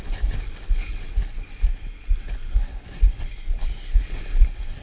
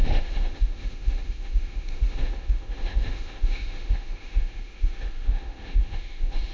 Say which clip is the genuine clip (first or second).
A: first